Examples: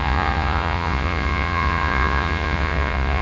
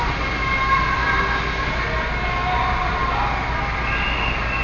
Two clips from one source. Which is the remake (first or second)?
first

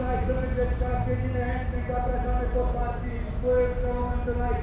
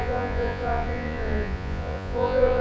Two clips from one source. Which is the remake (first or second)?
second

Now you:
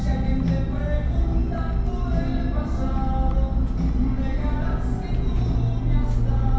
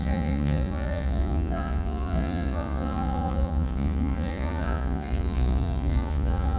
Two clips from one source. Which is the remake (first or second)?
second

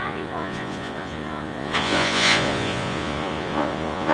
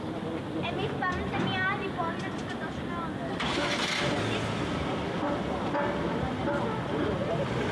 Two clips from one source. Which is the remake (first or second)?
first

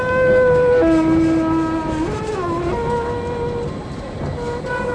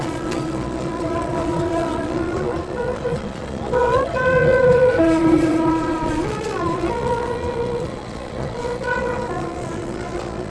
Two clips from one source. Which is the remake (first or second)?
second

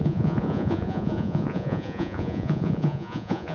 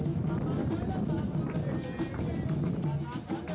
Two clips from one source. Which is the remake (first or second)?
first